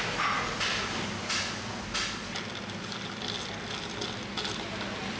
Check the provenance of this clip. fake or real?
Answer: real